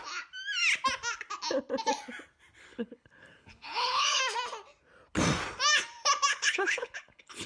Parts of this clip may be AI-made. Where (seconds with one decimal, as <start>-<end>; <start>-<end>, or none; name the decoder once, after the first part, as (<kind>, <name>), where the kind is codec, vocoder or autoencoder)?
2.7-4.2 (codec, HILCodec); 6.3-7.5

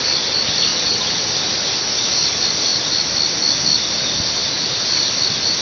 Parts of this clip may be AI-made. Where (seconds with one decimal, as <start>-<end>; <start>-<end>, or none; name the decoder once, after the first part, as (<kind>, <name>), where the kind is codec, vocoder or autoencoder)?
0.7-1.3 (vocoder, WaveNeXt)

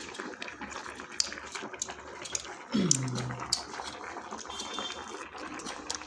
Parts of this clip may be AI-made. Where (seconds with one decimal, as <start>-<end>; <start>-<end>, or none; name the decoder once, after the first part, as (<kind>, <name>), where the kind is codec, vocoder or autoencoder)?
0.0-0.8 (vocoder, BigVGAN v2); 4.5-5.0

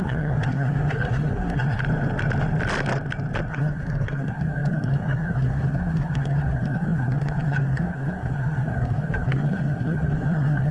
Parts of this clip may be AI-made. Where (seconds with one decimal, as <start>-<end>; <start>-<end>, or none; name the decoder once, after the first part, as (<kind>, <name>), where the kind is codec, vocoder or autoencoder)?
0.0-1.8 (codec, SNAC); 3.5-10.7

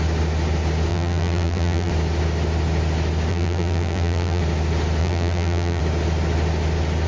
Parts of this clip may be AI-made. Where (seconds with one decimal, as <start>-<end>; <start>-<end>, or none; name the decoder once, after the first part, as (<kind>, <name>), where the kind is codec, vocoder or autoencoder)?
0.9-1.9 (vocoder, BigVGAN v2); 3.3-4.4; 5.0-5.8